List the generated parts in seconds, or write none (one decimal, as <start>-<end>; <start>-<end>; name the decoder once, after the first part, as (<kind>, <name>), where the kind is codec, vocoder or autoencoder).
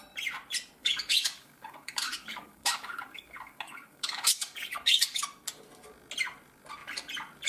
0.8-5.2 (codec, DAC)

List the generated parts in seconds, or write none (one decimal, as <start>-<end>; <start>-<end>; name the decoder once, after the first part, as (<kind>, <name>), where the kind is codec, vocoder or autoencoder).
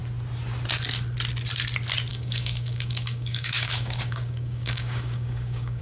2.1-5.8 (codec, DAC)